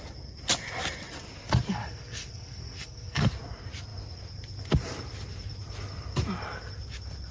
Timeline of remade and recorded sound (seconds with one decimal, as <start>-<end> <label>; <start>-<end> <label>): 0.0-1.7 recorded; 1.7-3.2 remade; 3.2-7.3 recorded